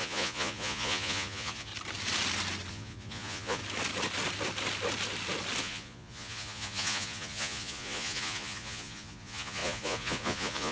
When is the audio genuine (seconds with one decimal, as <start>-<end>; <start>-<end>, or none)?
1.7-2.7; 3.6-5.6